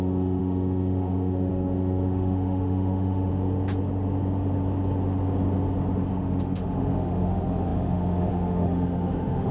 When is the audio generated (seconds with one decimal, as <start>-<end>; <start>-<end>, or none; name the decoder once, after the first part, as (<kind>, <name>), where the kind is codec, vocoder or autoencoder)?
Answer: 0.0-3.3 (autoencoder, DAC-VAE); 6.1-9.5

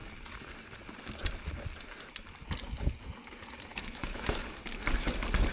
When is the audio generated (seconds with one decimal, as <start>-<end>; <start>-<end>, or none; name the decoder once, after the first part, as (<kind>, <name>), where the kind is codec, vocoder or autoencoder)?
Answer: 3.7-4.4 (autoencoder, DAC-VAE)

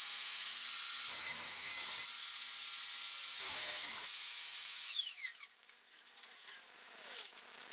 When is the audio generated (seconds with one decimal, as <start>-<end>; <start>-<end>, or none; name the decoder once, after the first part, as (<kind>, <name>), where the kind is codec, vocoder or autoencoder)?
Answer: 0.0-0.6 (autoencoder, DAC-VAE); 1.2-1.7; 3.4-7.7

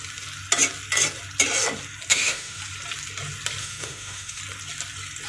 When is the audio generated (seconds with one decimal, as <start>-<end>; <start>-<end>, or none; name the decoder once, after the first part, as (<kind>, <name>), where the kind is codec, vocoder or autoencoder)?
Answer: 2.1-2.6 (autoencoder, DAC-VAE); 3.6-4.4